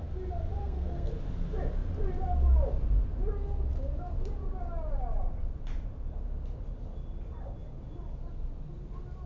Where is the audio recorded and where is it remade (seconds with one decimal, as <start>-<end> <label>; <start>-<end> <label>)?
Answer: 0.0-0.6 recorded; 0.6-1.1 remade; 1.1-9.3 recorded